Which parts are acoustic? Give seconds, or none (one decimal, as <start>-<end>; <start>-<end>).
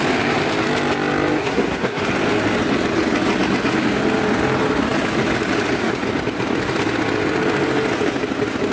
0.0-1.4; 2.0-8.7